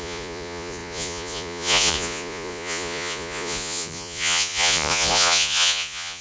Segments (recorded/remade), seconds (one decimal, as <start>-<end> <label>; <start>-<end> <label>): 0.0-6.2 remade